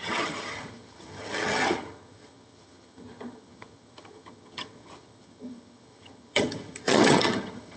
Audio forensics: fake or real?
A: fake